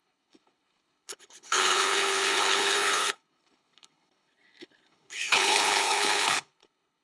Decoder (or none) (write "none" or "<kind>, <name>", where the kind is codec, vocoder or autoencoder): codec, HILCodec